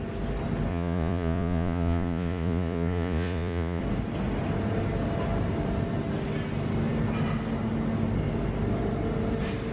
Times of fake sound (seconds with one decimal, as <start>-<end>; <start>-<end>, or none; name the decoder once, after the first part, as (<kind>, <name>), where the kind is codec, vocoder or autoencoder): 0.7-3.8 (vocoder, Vocos)